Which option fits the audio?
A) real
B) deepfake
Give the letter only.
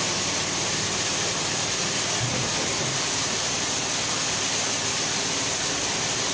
A